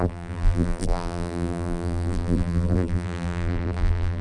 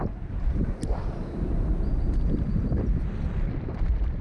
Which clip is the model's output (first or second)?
first